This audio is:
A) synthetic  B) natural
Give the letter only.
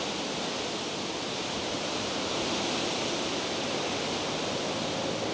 B